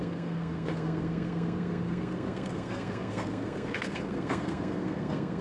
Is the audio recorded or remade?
remade